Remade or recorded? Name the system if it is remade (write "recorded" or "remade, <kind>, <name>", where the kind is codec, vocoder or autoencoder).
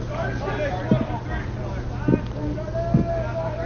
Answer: recorded